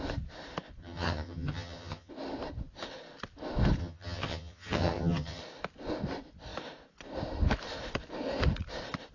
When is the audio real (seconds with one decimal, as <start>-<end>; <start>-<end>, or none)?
0.0-0.8; 2.1-3.8; 5.4-9.1

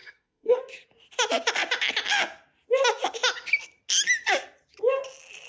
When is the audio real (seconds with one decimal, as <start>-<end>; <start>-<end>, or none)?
0.6-5.5

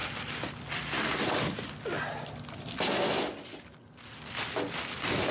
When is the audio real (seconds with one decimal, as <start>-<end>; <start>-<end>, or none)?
0.0-5.3

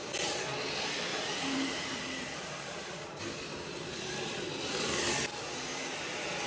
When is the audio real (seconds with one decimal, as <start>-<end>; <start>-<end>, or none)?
0.0-1.1; 3.2-6.5

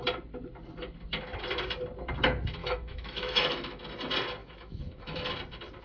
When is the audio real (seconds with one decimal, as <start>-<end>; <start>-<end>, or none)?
0.0-2.6; 3.8-4.4; 5.3-5.8

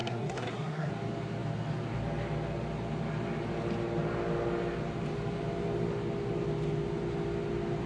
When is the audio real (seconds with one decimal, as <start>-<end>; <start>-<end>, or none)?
0.9-7.9